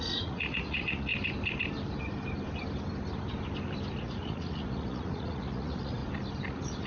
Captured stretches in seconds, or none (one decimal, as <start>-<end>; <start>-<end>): 1.1-4.0; 6.0-6.5